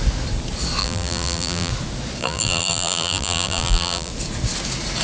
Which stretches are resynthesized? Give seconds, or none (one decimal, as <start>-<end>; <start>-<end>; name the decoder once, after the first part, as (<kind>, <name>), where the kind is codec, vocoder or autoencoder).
0.8-1.7 (vocoder, BigVGAN v2); 2.2-4.1